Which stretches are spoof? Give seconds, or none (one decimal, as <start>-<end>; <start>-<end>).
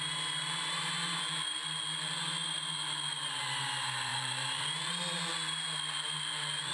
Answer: 0.6-1.2; 4.1-4.9